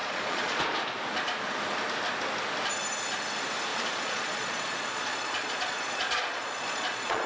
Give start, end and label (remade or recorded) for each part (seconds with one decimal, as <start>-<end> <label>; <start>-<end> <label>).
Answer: 0.0-0.6 remade; 0.6-3.7 recorded; 3.7-7.3 remade